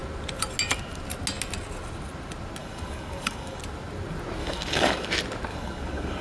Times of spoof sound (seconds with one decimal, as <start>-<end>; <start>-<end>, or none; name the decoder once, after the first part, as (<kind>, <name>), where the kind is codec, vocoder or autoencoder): 2.6-3.6 (codec, DAC); 4.4-5.1; 5.5-6.2